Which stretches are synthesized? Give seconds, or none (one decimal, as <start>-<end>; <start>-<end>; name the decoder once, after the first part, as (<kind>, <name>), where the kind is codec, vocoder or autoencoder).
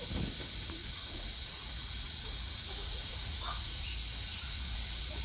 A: 0.8-3.9 (vocoder, Vocos); 4.3-5.2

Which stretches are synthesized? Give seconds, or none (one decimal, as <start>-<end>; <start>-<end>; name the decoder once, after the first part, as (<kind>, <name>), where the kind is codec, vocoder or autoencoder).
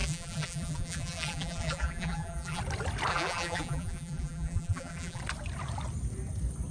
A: 0.0-2.6 (vocoder, BigVGAN v2); 3.1-5.2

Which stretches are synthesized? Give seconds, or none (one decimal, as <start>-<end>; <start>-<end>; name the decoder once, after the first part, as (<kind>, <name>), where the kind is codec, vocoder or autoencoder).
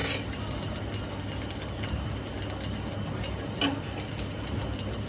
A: none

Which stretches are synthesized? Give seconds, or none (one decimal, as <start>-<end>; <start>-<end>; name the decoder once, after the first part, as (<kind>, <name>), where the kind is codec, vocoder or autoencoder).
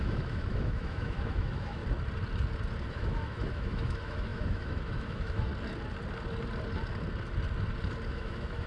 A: 0.0-1.8 (autoencoder, DAC-VAE); 2.9-5.5; 8.1-8.7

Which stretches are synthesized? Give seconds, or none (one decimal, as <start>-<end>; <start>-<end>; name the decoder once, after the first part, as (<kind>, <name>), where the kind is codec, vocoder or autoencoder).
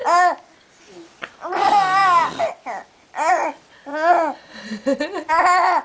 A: none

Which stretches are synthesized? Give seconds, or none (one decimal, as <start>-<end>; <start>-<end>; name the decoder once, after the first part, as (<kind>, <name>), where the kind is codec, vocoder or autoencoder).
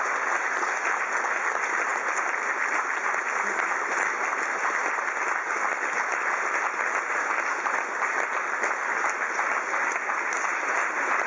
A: none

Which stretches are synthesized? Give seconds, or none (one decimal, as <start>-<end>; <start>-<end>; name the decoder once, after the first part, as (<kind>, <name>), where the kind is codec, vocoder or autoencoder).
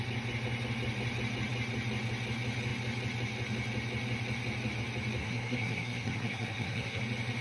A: 5.2-7.0 (codec, SNAC)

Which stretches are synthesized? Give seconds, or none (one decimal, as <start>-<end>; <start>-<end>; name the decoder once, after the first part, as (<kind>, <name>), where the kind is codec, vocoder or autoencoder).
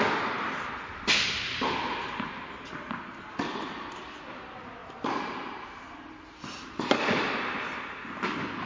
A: 4.8-7.4 (vocoder, BigVGAN v2)